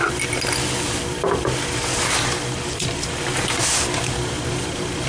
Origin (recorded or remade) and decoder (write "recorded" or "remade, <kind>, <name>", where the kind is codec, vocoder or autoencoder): recorded